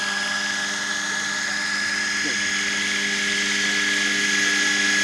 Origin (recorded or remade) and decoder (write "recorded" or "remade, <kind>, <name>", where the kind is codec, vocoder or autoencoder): recorded